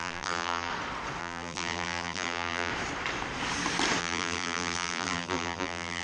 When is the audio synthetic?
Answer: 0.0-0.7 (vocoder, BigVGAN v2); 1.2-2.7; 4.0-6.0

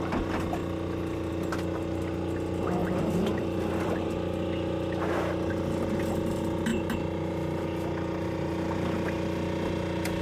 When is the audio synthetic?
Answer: 2.8-3.9 (vocoder, BigVGAN v2)

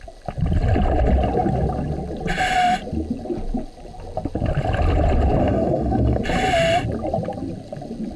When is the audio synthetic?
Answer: 5.4-6.2 (codec, SNAC)

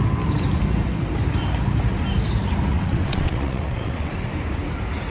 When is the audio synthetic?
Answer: 2.7-4.1 (vocoder, WaveNeXt)

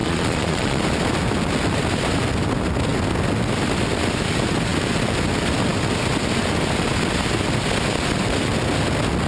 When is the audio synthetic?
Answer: 0.0-0.8 (vocoder, Vocos)